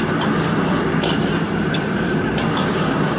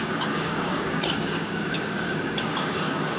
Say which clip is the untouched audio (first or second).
first